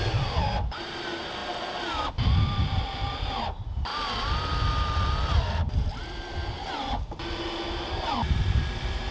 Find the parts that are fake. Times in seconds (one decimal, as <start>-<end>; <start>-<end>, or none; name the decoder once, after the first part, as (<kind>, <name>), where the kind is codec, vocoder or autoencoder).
0.0-1.4 (vocoder, BigVGAN v2); 2.1-3.9; 7.9-9.1